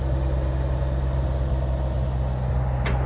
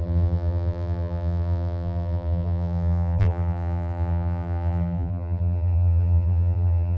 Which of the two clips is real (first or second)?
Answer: first